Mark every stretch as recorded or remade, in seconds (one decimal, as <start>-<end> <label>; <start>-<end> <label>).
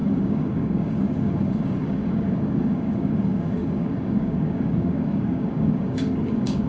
0.0-6.7 remade